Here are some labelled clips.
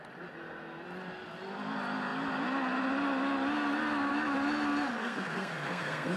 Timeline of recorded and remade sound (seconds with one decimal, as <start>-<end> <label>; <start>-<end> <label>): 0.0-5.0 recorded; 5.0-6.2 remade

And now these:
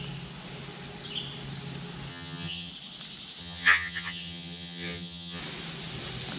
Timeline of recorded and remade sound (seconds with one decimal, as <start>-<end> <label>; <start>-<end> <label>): 0.0-2.1 recorded; 2.1-2.7 remade; 2.7-3.4 recorded; 3.4-5.4 remade; 5.4-6.4 recorded

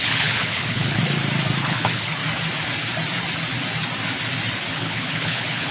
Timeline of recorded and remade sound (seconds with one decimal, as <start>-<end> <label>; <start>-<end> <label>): 0.0-1.0 remade; 1.0-1.6 recorded; 1.6-2.2 remade; 2.2-4.7 recorded; 4.7-5.7 remade

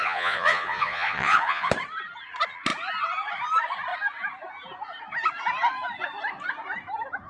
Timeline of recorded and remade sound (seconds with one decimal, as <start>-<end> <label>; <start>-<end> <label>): 0.0-1.7 remade; 1.7-7.3 recorded